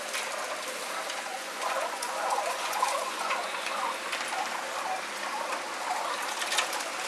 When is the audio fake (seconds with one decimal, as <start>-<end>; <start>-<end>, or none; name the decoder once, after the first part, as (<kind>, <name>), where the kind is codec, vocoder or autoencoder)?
1.3-3.9 (vocoder, Vocos)